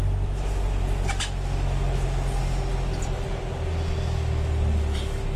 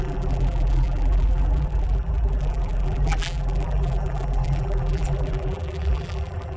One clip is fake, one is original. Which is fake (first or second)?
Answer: second